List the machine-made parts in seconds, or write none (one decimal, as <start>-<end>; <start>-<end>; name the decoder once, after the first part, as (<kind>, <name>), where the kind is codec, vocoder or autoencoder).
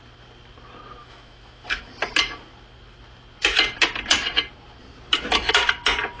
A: 1.0-1.9 (autoencoder, DAC-VAE)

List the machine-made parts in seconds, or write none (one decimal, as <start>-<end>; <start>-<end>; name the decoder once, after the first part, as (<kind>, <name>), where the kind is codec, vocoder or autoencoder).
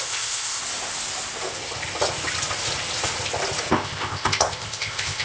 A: 0.0-0.6 (codec, ZipCodec); 3.7-5.2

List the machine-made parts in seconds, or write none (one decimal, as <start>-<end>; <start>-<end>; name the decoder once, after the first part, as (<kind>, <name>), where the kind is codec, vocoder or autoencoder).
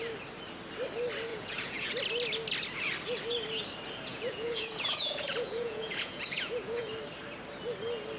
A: 1.3-1.9 (vocoder, Vocos); 4.1-6.9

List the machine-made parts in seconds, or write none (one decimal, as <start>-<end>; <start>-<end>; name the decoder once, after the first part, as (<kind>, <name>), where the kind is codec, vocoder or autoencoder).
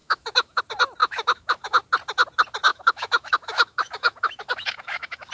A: 0.0-0.6 (autoencoder, DAC-VAE); 1.0-1.8; 2.7-5.3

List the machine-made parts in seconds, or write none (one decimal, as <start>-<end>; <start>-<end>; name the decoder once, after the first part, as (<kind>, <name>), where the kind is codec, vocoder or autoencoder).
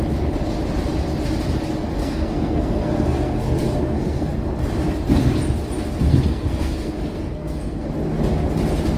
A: 2.0-4.3 (codec, SNAC); 6.1-7.9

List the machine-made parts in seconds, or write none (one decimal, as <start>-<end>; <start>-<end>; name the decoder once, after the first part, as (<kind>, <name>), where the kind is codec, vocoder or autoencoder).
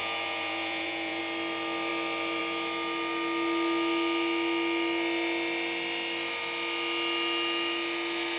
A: 0.0-1.2 (vocoder, Vocos)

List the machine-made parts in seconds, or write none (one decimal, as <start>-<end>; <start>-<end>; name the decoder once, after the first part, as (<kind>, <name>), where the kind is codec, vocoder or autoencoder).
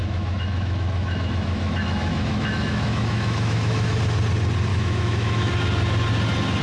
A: 0.0-4.0 (autoencoder, DAC-VAE); 4.7-5.5